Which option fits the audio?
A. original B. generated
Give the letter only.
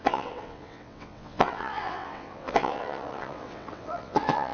B